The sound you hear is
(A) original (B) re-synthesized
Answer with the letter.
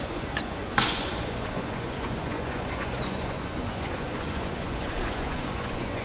B